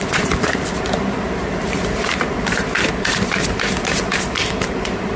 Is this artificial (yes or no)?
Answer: yes